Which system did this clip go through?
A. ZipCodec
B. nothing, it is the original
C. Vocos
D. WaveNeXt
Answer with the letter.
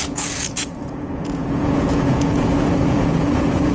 C